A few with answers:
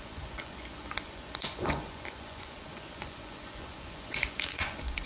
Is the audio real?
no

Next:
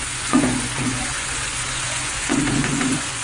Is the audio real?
no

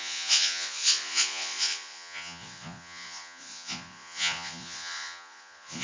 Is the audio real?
no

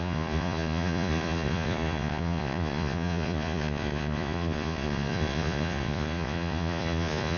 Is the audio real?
no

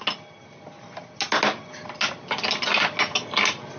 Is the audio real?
yes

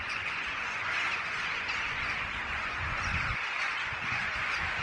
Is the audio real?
no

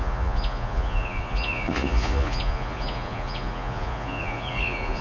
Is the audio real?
no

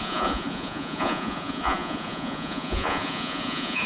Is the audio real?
no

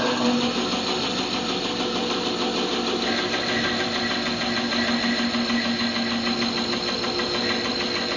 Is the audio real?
yes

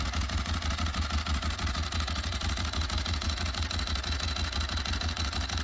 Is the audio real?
no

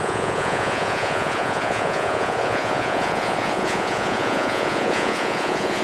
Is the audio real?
no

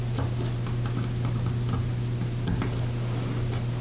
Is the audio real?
yes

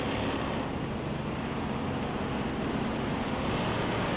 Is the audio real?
yes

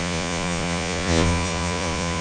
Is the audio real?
no